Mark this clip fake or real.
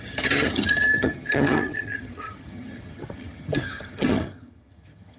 fake